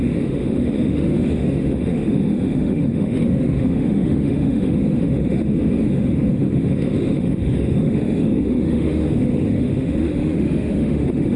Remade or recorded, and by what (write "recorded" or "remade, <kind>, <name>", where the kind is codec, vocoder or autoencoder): remade, autoencoder, DAC-VAE